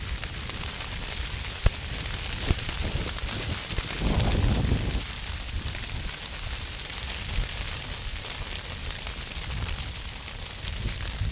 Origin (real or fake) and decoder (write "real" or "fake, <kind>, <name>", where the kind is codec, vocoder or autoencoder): real